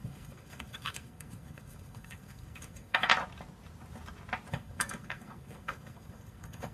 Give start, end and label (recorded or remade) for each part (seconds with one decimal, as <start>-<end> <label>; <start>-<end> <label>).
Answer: 0.0-3.1 remade; 3.1-4.5 recorded; 4.5-6.7 remade